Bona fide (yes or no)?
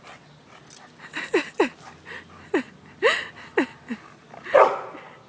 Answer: yes